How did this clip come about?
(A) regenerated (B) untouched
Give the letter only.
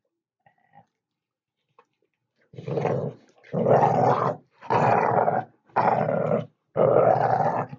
B